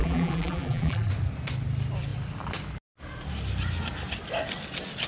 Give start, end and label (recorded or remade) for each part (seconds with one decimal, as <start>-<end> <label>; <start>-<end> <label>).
0.0-1.1 remade; 1.1-5.1 recorded